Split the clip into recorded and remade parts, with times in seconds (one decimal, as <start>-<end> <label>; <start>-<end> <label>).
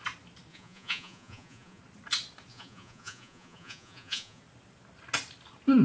0.0-0.5 recorded; 0.5-1.8 remade; 1.8-2.5 recorded; 2.5-4.4 remade; 4.4-5.8 recorded